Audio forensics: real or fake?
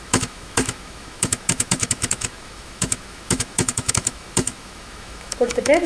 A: fake